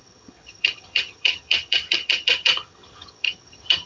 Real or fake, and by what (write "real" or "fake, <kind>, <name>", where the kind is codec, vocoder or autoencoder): fake, vocoder, HiFi-GAN